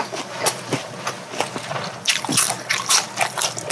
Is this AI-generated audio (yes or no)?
yes